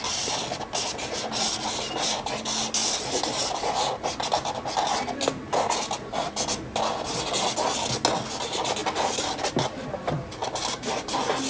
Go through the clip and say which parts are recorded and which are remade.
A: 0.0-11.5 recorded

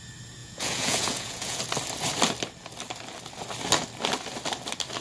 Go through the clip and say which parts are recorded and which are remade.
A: 0.0-0.4 recorded; 0.4-1.6 remade; 1.6-5.0 recorded

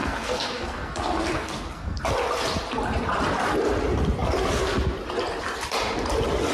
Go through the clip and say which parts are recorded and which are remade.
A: 0.0-2.0 remade; 2.0-6.5 recorded

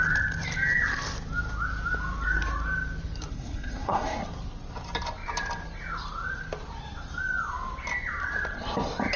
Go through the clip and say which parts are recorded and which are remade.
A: 0.0-3.3 recorded; 3.3-4.2 remade; 4.2-9.2 recorded

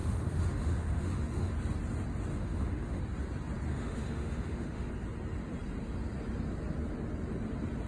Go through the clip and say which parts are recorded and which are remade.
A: 0.0-1.5 remade; 1.5-2.3 recorded; 2.3-3.0 remade; 3.0-3.7 recorded; 3.7-4.9 remade; 4.9-7.9 recorded

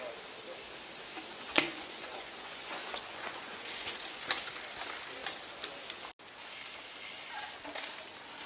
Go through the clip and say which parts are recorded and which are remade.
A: 0.0-1.3 recorded; 1.3-4.5 remade; 4.5-8.5 recorded

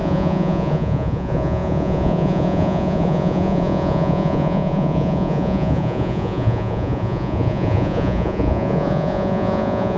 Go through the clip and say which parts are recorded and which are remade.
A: 0.0-10.0 remade

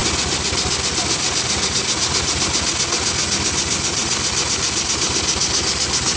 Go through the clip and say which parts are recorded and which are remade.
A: 0.0-6.2 recorded